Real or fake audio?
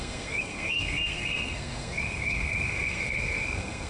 fake